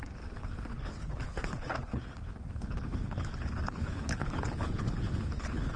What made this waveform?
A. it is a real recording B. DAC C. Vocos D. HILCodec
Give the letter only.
D